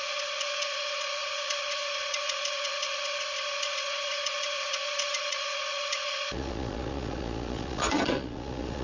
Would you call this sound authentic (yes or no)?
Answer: no